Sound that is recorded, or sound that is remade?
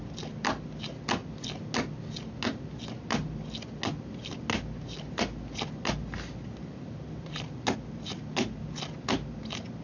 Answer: recorded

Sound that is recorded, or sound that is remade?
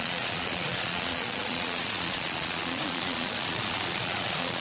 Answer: remade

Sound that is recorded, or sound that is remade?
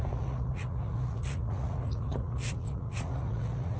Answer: remade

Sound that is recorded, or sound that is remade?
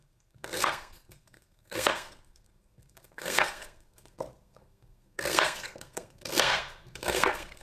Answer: remade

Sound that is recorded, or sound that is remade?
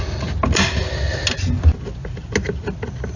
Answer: recorded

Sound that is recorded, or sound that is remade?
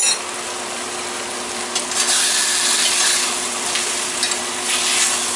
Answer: recorded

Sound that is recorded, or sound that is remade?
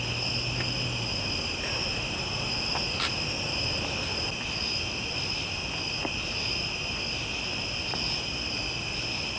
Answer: recorded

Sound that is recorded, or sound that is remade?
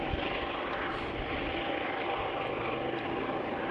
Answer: remade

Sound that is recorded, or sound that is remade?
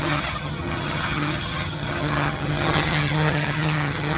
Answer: remade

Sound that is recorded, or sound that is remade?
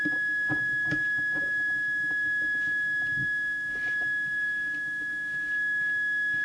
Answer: recorded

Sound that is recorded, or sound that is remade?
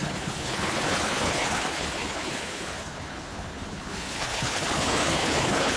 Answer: remade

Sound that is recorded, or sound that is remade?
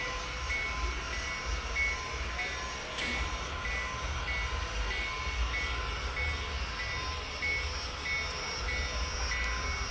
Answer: recorded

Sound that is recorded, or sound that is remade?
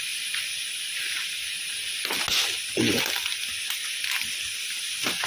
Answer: recorded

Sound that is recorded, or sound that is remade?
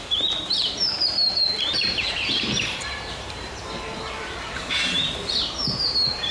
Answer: remade